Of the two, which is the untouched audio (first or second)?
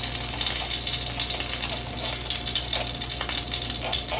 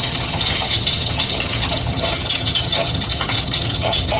first